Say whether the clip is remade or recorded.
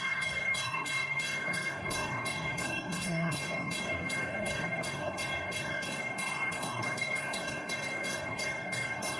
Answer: remade